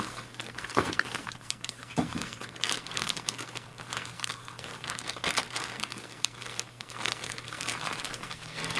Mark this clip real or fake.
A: fake